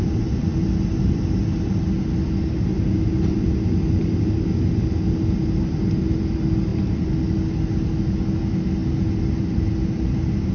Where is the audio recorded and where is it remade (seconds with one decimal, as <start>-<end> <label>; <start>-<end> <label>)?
0.0-10.5 recorded